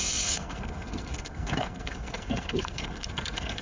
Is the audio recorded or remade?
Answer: remade